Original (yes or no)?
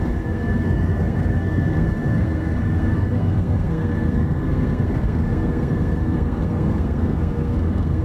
no